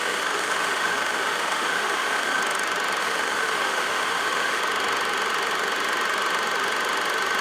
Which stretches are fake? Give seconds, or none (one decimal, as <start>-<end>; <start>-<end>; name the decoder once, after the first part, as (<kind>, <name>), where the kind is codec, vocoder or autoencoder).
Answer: 0.0-2.4 (autoencoder, DAC-VAE); 3.0-4.6